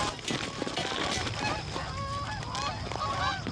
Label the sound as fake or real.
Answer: real